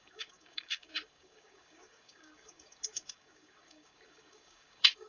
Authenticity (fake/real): fake